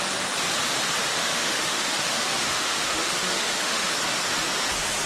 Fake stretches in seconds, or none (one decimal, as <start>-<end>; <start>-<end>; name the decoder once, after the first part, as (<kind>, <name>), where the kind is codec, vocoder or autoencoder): 1.1-3.9 (autoencoder, DAC-VAE)